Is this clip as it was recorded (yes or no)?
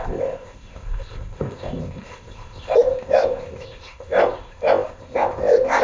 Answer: no